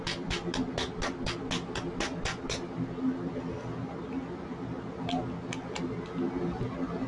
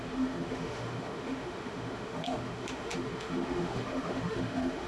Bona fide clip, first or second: first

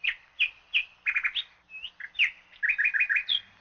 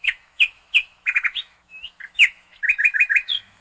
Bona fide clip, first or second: first